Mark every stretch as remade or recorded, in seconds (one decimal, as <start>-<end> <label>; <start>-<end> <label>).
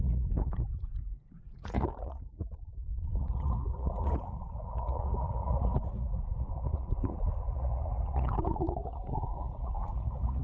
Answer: 0.0-10.4 remade